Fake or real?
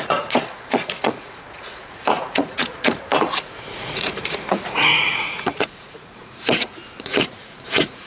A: fake